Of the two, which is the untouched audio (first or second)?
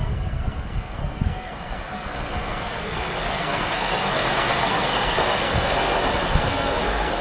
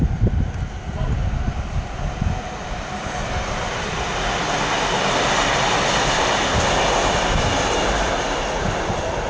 second